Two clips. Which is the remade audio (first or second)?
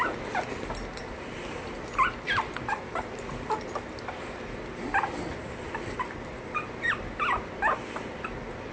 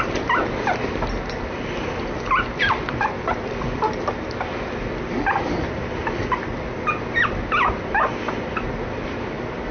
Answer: first